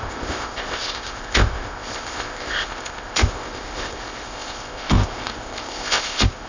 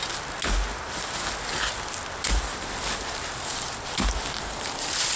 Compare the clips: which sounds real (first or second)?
second